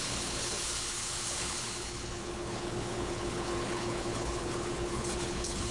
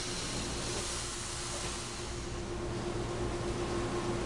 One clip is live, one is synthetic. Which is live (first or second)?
second